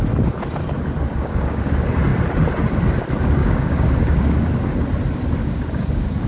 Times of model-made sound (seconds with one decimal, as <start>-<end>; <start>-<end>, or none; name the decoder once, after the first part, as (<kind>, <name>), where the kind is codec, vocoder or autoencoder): 1.1-1.7 (codec, DAC); 3.4-4.8; 5.4-6.3